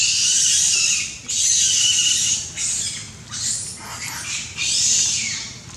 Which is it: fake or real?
real